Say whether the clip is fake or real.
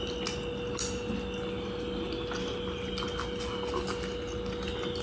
real